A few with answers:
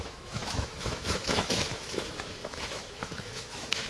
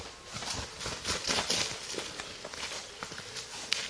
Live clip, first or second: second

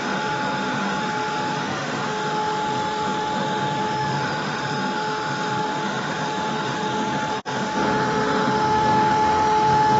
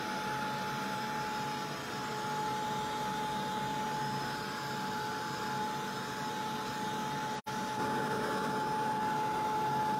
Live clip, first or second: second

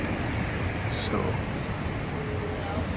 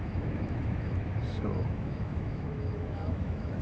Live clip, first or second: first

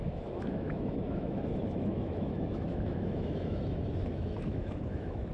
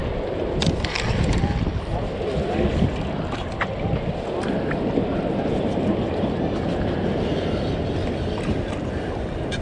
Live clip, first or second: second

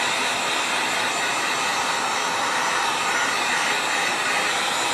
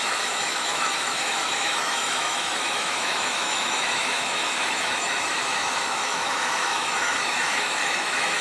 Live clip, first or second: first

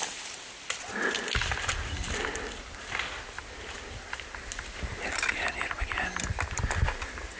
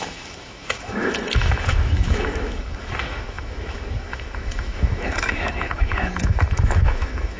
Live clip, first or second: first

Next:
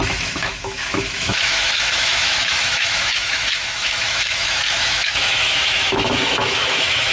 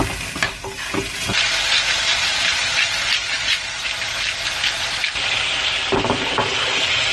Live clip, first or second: second